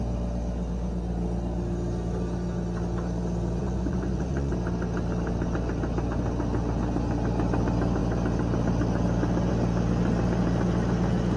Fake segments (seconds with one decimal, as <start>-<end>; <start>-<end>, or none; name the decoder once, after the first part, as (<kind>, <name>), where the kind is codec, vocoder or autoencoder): 3.6-4.5 (vocoder, Vocos)

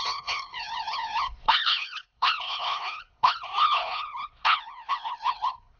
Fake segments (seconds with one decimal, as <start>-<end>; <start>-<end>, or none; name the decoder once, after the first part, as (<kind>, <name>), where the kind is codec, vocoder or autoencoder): 0.0-5.8 (codec, HILCodec)

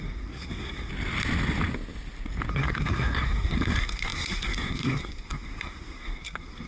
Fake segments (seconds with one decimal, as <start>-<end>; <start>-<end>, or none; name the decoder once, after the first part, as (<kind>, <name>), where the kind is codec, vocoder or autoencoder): 0.0-0.9 (codec, SNAC); 2.5-6.7

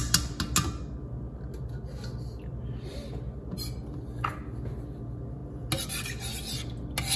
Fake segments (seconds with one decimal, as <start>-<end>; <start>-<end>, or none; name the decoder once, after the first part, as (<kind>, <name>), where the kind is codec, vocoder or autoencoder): none

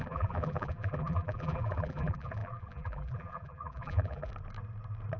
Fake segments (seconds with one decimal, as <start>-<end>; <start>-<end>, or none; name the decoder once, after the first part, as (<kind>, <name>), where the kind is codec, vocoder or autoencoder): 0.0-4.3 (vocoder, BigVGAN v2)